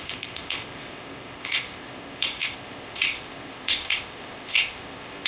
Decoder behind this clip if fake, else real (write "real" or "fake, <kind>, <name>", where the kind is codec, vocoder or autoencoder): fake, codec, ZipCodec